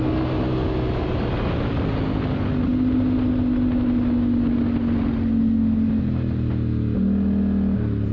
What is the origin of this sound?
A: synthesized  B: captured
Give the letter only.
B